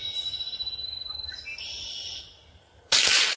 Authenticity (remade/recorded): recorded